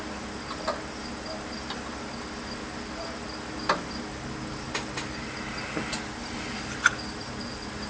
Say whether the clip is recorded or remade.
recorded